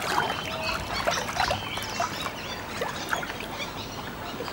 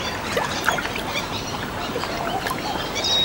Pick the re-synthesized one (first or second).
second